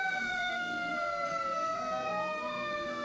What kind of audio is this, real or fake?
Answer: fake